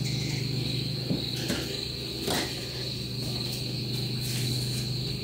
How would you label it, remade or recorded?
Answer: recorded